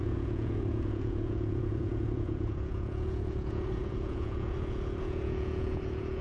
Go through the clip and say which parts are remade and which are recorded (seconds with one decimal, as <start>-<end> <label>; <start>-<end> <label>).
0.0-6.2 remade

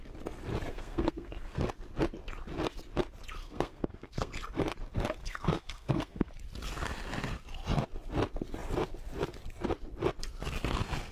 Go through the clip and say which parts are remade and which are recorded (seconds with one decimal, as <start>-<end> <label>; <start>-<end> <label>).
0.0-0.7 recorded; 0.7-1.7 remade; 1.7-3.4 recorded; 3.4-4.3 remade; 4.3-5.2 recorded; 5.2-6.3 remade; 6.3-11.1 recorded

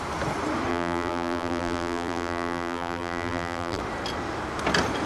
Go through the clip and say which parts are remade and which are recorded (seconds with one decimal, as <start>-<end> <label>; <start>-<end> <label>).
0.0-0.7 recorded; 0.7-3.8 remade; 3.8-5.1 recorded

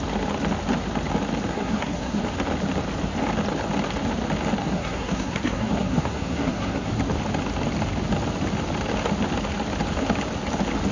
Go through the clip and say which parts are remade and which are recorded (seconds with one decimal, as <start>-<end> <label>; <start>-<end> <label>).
0.0-1.5 recorded; 1.5-2.2 remade; 2.2-4.6 recorded; 4.6-6.9 remade; 6.9-10.9 recorded

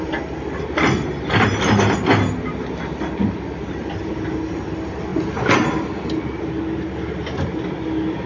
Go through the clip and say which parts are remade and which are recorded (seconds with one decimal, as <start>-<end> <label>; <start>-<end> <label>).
0.0-0.8 recorded; 0.8-1.5 remade; 1.5-8.3 recorded

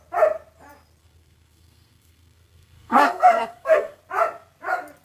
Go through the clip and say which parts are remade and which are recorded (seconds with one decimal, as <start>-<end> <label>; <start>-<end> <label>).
0.0-1.0 recorded; 1.0-4.0 remade; 4.0-5.0 recorded